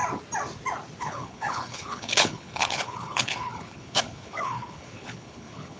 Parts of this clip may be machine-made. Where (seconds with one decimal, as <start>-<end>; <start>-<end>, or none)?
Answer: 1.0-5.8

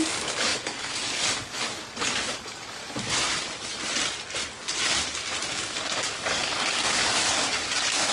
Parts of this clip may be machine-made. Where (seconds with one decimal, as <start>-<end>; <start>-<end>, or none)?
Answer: 0.0-2.8; 5.5-8.1

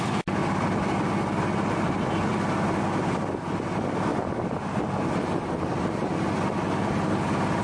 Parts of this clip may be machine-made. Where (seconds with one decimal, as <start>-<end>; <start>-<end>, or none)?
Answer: none